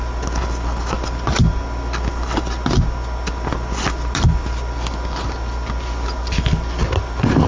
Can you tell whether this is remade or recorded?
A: recorded